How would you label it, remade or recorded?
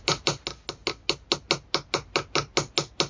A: recorded